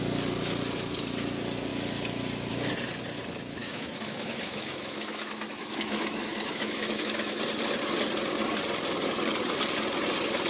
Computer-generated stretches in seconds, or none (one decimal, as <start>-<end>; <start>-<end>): 3.6-7.4